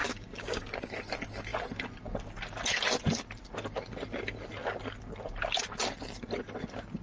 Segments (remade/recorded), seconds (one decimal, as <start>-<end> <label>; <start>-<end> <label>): 0.0-0.9 remade; 0.9-7.0 recorded